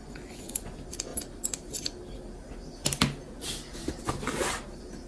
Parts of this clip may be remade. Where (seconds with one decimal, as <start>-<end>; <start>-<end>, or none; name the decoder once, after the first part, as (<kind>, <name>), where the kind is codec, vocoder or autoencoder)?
0.0-0.7 (vocoder, Vocos)

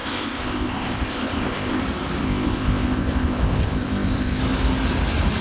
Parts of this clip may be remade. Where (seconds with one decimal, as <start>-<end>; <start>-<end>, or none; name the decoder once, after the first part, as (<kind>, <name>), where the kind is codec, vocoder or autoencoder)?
0.0-1.8 (codec, ZipCodec); 2.2-4.4

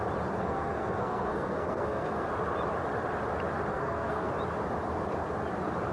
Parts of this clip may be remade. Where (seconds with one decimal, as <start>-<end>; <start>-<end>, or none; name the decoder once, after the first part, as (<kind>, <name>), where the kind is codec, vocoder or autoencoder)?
0.4-2.3 (codec, SNAC); 3.7-4.3

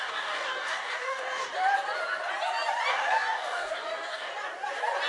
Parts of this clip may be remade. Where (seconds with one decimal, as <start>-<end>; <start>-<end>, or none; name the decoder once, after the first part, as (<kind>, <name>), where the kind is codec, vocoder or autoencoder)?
0.0-1.5 (codec, DAC); 2.9-4.3

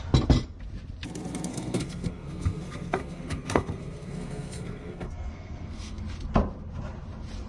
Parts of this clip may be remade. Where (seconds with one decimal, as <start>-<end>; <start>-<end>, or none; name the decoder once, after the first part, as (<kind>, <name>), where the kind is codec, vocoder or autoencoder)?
1.5-6.0 (codec, SNAC)

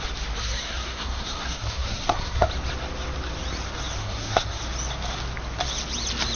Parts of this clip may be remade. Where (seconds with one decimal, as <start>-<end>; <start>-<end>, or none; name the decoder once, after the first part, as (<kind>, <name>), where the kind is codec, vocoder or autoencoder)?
0.4-2.5 (codec, SNAC); 4.0-4.6